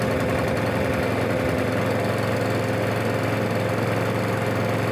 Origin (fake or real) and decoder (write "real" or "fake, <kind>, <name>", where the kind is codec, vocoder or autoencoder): real